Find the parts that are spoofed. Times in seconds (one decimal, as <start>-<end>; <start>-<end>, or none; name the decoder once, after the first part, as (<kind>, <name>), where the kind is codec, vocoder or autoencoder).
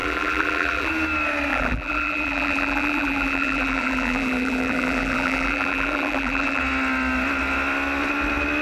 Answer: 0.0-0.9 (vocoder, BigVGAN v2); 1.5-6.6